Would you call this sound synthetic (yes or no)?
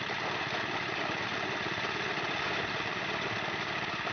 no